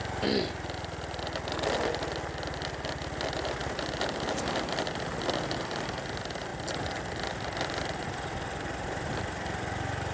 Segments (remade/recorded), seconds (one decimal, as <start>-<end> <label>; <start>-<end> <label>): 0.0-10.1 recorded